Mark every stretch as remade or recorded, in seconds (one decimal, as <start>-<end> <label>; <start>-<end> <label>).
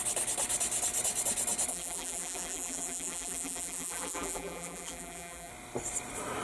0.0-1.7 recorded; 1.7-5.5 remade; 5.5-6.4 recorded